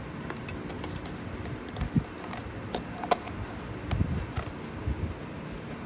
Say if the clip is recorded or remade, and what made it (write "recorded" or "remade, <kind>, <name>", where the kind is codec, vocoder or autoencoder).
recorded